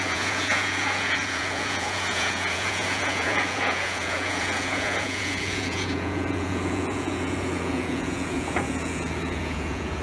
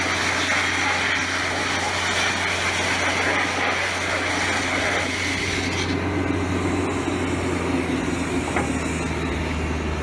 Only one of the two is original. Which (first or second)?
second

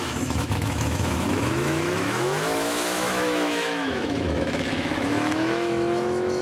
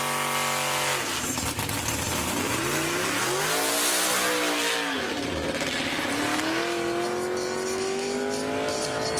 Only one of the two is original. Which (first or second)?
second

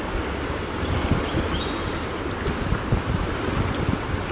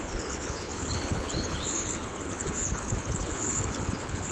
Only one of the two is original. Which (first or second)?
first